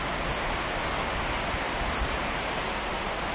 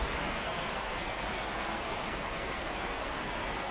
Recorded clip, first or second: first